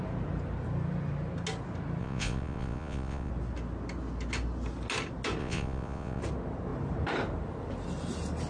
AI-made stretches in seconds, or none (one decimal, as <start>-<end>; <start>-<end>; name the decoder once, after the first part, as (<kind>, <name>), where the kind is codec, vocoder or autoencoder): 2.0-3.3 (vocoder, Vocos); 5.4-6.2